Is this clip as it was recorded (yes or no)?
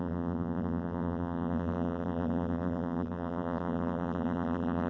no